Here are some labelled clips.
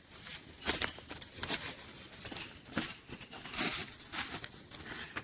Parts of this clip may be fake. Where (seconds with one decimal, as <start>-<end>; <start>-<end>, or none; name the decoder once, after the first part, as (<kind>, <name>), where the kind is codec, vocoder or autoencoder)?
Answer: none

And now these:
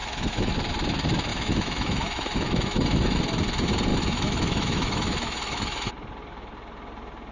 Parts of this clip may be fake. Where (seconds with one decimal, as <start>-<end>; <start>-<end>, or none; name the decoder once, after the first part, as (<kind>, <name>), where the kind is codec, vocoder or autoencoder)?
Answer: 0.0-0.5 (autoencoder, DAC-VAE); 1.3-3.2; 3.9-5.9

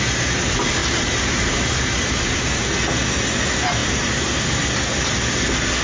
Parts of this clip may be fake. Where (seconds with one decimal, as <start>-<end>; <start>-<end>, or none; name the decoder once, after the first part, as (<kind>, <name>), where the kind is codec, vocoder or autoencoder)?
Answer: 0.8-2.6 (vocoder, BigVGAN v2); 3.8-4.6